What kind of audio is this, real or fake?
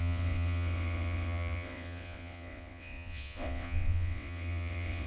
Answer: fake